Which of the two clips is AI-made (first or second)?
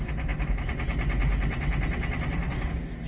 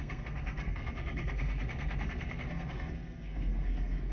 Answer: second